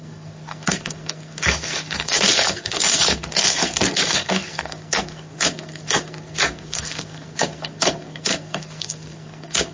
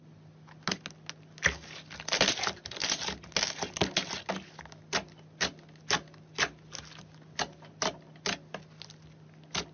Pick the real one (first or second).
second